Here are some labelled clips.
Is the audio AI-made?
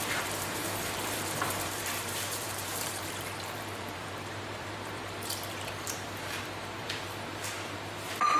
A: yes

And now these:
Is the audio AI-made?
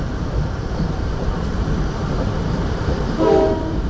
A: yes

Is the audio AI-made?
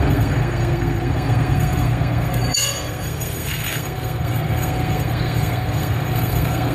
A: yes